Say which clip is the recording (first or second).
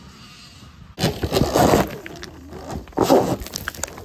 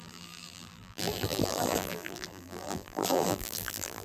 first